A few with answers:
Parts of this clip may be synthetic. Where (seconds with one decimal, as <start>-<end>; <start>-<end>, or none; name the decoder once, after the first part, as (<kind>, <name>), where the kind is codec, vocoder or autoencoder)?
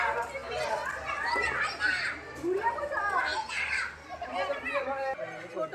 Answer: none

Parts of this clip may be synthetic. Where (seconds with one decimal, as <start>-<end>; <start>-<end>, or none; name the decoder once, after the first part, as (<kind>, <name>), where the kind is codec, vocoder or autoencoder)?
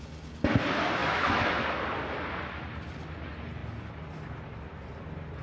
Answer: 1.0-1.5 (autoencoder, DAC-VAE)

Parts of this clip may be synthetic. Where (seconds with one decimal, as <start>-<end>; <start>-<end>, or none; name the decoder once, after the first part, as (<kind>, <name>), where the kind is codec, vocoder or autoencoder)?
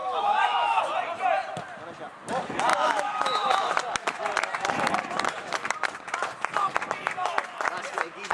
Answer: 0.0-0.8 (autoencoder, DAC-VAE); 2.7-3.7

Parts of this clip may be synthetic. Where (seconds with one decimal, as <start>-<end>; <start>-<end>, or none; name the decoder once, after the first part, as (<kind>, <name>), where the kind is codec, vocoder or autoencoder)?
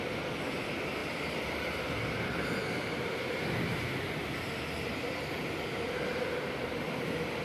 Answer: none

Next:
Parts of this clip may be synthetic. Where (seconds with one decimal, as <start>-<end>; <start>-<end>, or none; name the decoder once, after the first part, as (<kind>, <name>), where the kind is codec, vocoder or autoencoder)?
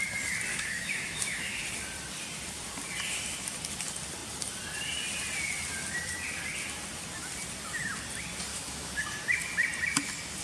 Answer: 0.5-1.6 (autoencoder, DAC-VAE); 8.5-9.0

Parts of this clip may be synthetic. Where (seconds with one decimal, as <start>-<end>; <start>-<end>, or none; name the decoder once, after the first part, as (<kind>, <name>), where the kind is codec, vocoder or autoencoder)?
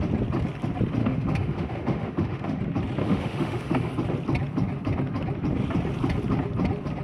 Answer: 1.0-2.6 (autoencoder, DAC-VAE); 3.0-3.9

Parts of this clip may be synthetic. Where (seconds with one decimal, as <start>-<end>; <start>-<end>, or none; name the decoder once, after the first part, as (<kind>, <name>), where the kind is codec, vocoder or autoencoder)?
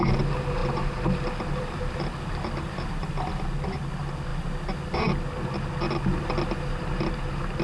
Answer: none